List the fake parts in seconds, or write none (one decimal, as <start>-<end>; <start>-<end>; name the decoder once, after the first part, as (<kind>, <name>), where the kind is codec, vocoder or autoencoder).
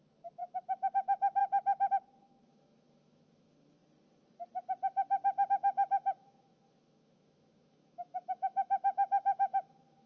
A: 0.0-1.4 (autoencoder, DAC-VAE); 1.9-3.8; 5.5-10.1